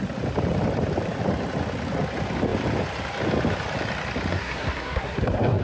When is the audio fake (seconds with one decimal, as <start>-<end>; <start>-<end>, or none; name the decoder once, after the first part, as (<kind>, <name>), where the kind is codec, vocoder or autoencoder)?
4.3-5.6 (codec, SNAC)